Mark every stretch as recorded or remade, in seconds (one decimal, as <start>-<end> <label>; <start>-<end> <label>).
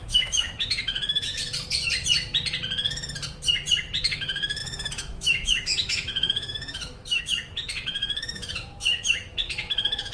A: 0.0-1.4 remade; 1.4-4.0 recorded; 4.0-10.1 remade